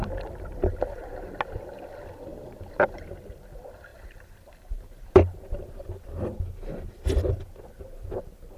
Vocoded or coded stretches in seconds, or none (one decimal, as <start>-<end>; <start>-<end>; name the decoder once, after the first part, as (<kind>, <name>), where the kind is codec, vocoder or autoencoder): 0.0-1.0 (vocoder, BigVGAN v2); 3.9-7.6